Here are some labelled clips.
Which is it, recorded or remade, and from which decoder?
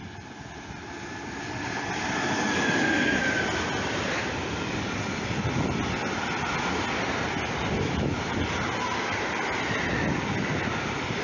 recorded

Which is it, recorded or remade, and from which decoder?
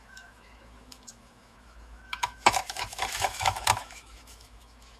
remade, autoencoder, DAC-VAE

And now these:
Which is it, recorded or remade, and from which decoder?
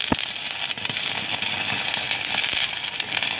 recorded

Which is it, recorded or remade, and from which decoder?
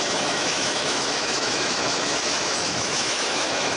remade, autoencoder, DAC-VAE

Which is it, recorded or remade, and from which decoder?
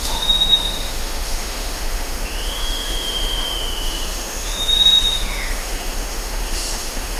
remade, autoencoder, DAC-VAE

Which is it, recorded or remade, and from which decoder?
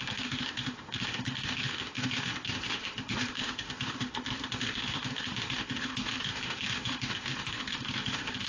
remade, autoencoder, DAC-VAE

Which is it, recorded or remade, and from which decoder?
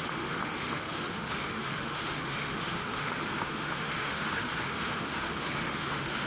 remade, autoencoder, DAC-VAE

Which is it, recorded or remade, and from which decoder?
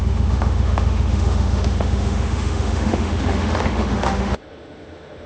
remade, autoencoder, DAC-VAE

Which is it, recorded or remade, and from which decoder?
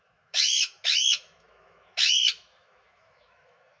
remade, autoencoder, DAC-VAE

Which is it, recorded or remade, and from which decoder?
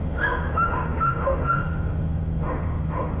remade, autoencoder, DAC-VAE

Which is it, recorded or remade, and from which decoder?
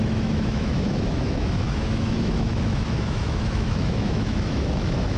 remade, autoencoder, DAC-VAE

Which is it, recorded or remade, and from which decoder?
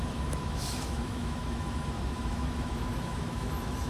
remade, autoencoder, DAC-VAE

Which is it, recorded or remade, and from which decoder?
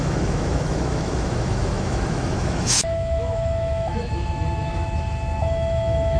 remade, autoencoder, DAC-VAE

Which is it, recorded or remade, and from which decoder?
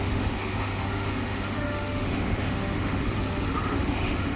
remade, autoencoder, DAC-VAE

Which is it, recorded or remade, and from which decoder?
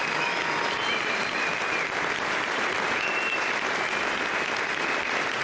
recorded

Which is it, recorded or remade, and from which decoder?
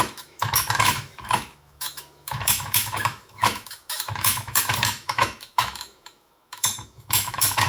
remade, autoencoder, DAC-VAE